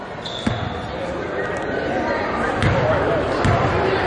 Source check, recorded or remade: recorded